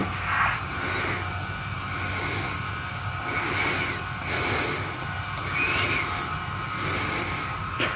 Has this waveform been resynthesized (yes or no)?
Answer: no